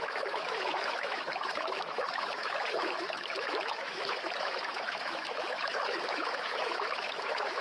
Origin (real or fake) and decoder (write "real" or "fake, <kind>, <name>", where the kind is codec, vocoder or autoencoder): fake, autoencoder, DAC-VAE